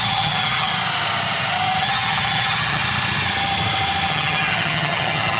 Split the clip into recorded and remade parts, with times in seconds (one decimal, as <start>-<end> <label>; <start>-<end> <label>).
0.0-0.7 remade; 0.7-1.8 recorded; 1.8-2.8 remade; 2.8-4.1 recorded; 4.1-5.4 remade